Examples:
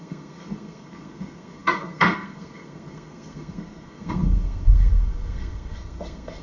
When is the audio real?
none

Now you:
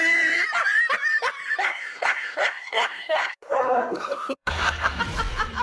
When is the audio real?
0.0-1.6; 5.0-5.6

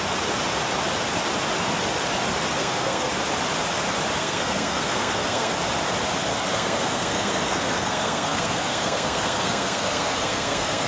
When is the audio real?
0.0-2.6; 3.1-4.2; 5.5-6.3

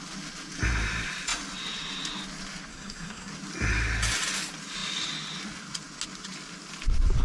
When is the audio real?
0.0-2.7; 3.3-7.2

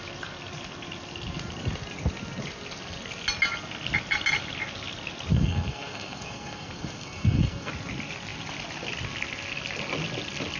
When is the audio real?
0.0-5.3; 7.7-10.6

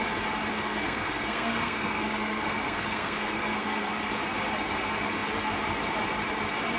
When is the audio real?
0.0-0.5; 4.1-6.8